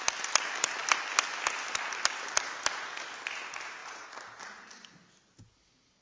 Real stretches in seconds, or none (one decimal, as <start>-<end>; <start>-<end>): 0.0-3.8; 4.4-6.0